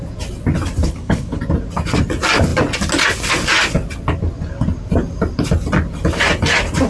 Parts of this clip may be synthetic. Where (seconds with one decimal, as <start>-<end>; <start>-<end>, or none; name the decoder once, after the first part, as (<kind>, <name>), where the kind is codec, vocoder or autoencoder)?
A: 0.8-1.4 (codec, HILCodec)